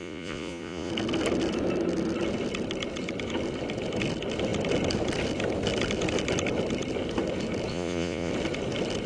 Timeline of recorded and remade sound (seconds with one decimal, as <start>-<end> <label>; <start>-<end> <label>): 0.0-0.9 remade; 0.9-7.7 recorded; 7.7-8.3 remade; 8.3-9.1 recorded